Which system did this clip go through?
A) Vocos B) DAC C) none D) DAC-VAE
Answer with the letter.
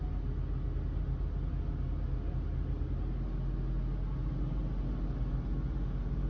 C